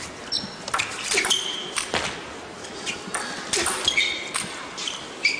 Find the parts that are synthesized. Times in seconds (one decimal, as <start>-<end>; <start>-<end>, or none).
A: none